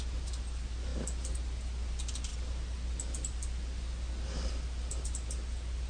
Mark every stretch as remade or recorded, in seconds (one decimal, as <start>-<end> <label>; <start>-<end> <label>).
0.0-5.9 recorded